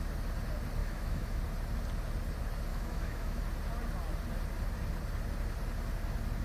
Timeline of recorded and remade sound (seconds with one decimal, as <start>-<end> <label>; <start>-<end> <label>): 0.0-0.8 recorded; 0.8-1.4 remade; 1.4-2.7 recorded; 2.7-3.4 remade; 3.4-6.4 recorded